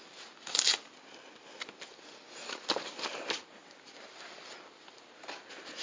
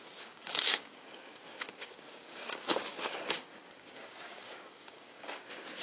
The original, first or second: first